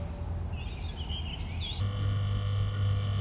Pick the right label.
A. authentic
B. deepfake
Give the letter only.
A